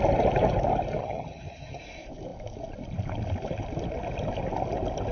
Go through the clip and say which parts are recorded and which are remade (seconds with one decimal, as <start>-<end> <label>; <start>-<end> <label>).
0.0-1.0 recorded; 1.0-1.8 remade; 1.8-5.1 recorded